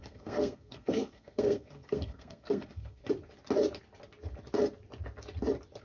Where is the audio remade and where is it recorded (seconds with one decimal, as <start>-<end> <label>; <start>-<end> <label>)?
0.0-3.0 remade; 3.0-5.8 recorded